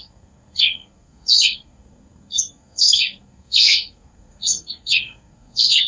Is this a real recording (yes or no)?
no